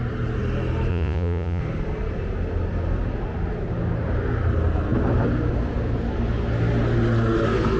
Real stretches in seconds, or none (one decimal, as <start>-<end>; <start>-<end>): 0.0-0.9; 1.6-7.8